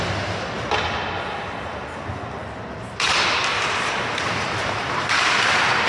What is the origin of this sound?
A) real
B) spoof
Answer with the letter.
A